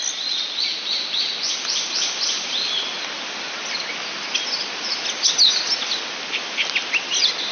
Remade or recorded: recorded